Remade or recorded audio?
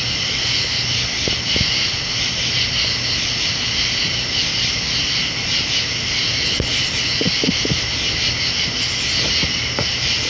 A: recorded